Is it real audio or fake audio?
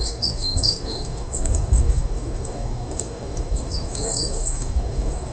fake